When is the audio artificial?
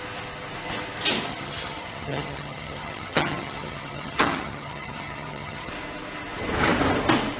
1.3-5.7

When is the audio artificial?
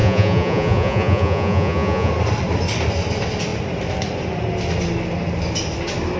0.0-2.1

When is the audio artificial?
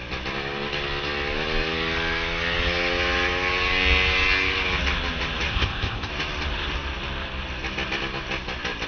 5.5-6.1